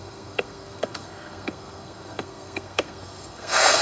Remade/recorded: remade